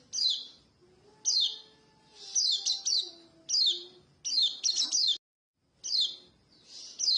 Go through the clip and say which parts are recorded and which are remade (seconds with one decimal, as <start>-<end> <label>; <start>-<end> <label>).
0.0-7.2 recorded